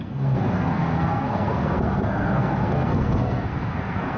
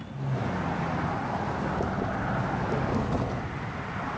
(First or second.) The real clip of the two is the second